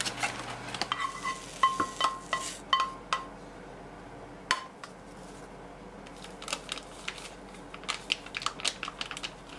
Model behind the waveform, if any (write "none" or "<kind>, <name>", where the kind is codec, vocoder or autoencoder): none